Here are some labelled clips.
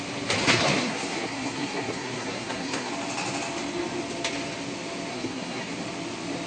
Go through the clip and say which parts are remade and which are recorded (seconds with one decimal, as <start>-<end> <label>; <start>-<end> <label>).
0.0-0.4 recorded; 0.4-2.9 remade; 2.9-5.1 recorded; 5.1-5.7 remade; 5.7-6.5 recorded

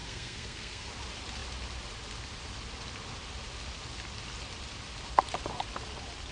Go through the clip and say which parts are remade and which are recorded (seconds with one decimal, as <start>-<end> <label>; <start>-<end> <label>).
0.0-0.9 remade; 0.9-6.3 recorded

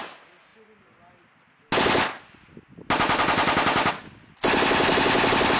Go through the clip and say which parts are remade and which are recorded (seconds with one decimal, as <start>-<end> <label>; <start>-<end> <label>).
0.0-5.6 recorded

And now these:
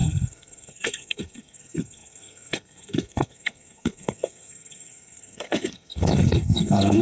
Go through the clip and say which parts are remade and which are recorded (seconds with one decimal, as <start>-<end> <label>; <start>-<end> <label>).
0.0-7.0 remade